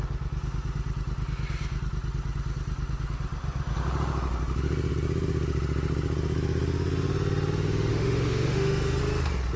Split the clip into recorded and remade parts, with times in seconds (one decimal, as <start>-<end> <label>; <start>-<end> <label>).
0.0-7.9 recorded; 7.9-9.0 remade; 9.0-9.6 recorded